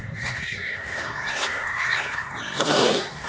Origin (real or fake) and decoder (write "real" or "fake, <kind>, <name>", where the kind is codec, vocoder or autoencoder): fake, codec, SNAC